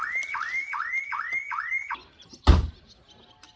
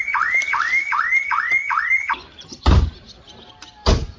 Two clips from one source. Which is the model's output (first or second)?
second